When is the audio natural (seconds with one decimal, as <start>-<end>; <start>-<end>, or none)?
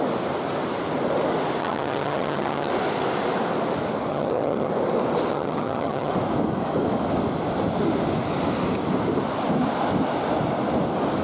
0.0-1.6; 2.7-4.1; 4.7-5.3; 6.1-11.2